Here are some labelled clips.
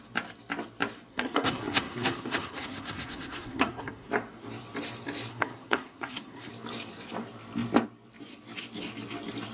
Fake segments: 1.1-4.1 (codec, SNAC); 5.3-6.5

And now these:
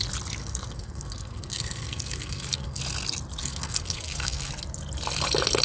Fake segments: 0.4-2.8 (codec, SNAC); 3.4-4.5